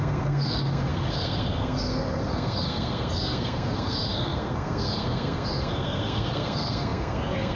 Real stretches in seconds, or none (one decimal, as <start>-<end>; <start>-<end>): none

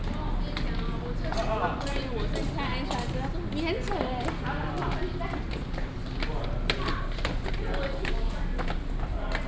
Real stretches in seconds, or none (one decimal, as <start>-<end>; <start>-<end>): 0.0-9.5

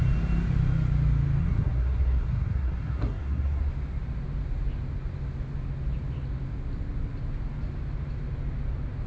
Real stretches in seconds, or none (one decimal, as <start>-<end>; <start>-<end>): 0.0-1.4; 3.6-9.1

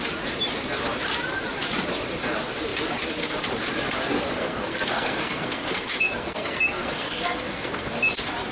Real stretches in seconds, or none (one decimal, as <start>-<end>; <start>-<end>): 0.0-4.3; 7.9-8.5

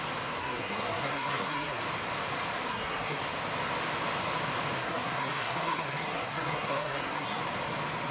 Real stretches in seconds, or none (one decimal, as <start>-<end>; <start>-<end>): 0.0-0.4; 1.8-2.7; 3.2-4.8; 7.4-8.1

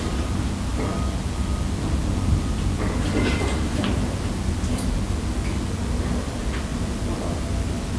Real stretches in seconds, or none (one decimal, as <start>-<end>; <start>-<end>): 0.0-8.0